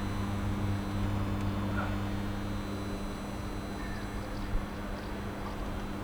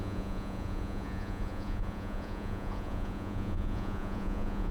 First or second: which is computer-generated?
second